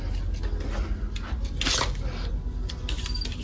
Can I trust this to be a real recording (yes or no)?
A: yes